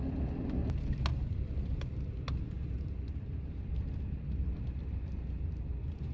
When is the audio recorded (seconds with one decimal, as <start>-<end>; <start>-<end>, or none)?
0.0-6.1